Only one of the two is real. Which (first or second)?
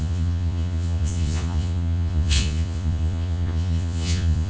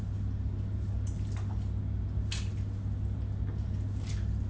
second